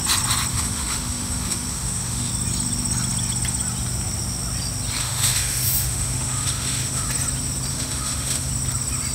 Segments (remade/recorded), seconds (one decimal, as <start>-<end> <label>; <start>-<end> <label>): 0.0-0.5 recorded; 0.5-2.3 remade; 2.3-5.0 recorded; 5.0-7.1 remade; 7.1-7.7 recorded; 7.7-8.5 remade; 8.5-9.1 recorded